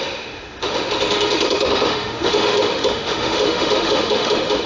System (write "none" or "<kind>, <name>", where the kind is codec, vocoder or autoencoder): autoencoder, DAC-VAE